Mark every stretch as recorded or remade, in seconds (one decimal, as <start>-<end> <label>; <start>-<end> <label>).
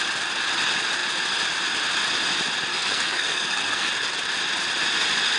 0.0-2.7 recorded; 2.7-3.9 remade; 3.9-5.4 recorded